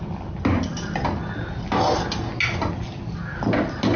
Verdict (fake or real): real